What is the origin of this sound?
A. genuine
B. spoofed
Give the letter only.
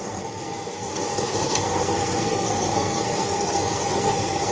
B